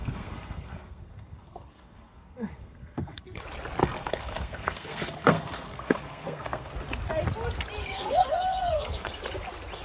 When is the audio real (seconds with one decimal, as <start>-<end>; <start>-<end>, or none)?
3.4-3.8; 6.7-7.8; 9.1-9.8

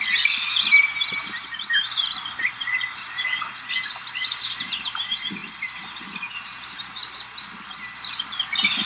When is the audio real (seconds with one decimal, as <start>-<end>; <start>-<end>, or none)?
0.0-8.9